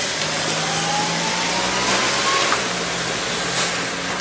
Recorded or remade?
recorded